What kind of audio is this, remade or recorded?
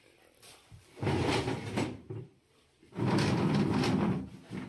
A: remade